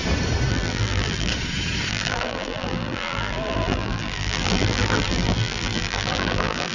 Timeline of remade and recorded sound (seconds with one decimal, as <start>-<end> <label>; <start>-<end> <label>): 0.0-0.5 recorded; 0.5-1.3 remade; 1.3-1.9 recorded; 1.9-6.7 remade